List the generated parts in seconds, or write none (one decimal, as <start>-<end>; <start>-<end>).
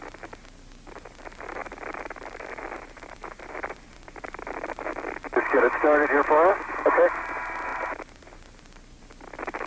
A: 1.6-6.3; 7.7-9.0